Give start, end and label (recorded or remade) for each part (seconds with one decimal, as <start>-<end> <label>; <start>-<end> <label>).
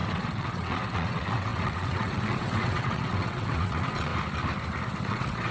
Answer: 0.0-4.1 remade; 4.1-5.0 recorded; 5.0-5.5 remade